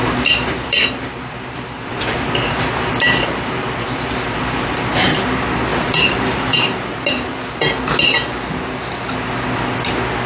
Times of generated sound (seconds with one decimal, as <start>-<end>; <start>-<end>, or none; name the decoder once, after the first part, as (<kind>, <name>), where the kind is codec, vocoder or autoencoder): 0.0-4.8 (vocoder, BigVGAN v2); 5.7-7.6